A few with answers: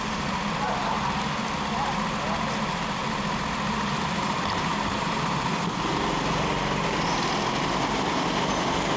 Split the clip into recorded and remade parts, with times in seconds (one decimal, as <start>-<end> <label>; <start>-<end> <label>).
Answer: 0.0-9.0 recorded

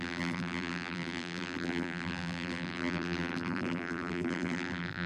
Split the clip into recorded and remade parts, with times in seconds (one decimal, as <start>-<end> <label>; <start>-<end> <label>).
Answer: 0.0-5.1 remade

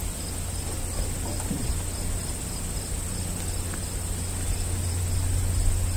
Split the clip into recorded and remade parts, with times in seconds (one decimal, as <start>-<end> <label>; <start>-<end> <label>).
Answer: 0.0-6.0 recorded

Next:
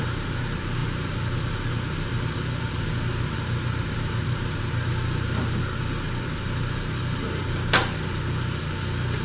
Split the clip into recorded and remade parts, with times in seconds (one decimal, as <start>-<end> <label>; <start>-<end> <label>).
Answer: 0.0-9.2 remade